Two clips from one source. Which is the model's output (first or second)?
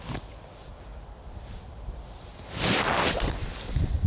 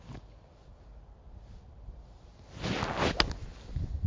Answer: first